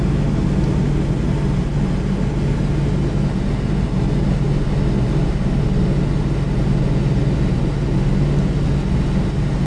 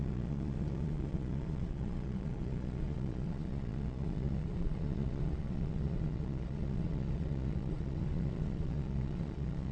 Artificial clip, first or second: second